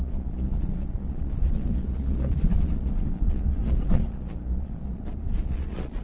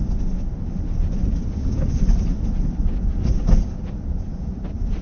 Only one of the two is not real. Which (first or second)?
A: first